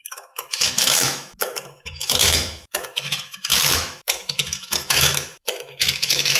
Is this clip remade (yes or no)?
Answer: yes